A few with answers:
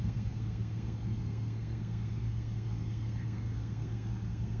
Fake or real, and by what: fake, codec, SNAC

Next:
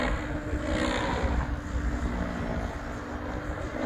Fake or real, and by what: real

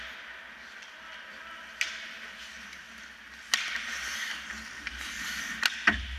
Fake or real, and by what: real